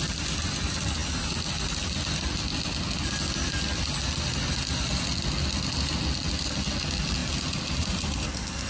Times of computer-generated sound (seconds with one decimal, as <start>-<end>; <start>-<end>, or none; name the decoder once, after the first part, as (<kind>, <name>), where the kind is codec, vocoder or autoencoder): none